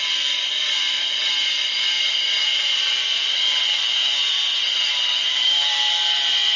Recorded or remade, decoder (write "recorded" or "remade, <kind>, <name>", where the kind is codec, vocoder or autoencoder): remade, vocoder, BigVGAN v2